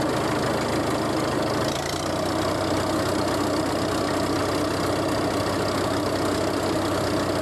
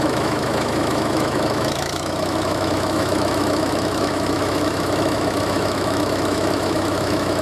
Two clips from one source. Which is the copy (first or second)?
second